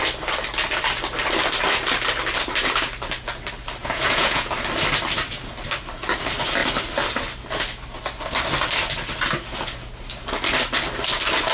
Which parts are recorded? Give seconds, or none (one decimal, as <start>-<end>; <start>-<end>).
0.0-3.8; 4.5-11.5